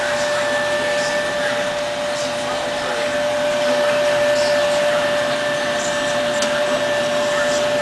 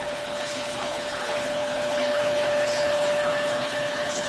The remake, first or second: second